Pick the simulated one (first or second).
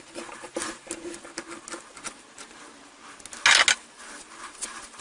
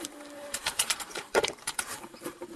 second